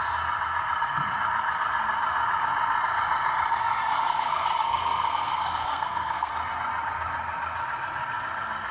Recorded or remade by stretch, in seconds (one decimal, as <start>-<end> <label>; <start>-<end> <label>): 0.0-3.6 recorded; 3.6-6.3 remade; 6.3-8.7 recorded